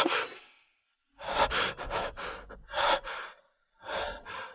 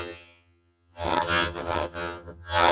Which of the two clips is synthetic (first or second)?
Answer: second